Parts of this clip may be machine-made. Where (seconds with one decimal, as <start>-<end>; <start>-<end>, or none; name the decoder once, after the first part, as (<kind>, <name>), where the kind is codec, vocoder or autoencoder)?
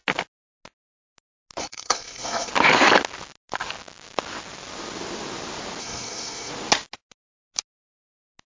1.6-2.5 (codec, SNAC); 5.8-6.5